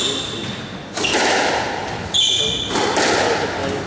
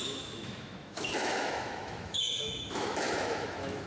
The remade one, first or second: second